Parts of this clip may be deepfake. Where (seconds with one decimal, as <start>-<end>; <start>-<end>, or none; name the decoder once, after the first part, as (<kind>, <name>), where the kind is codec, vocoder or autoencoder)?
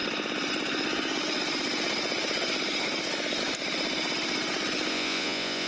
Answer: 4.9-5.7 (vocoder, Vocos)